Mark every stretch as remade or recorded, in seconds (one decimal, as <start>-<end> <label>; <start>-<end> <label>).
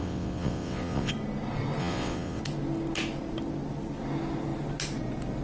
0.0-1.1 remade; 1.1-1.8 recorded; 1.8-2.4 remade; 2.4-5.4 recorded